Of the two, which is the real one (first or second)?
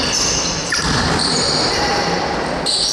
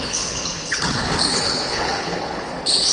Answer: first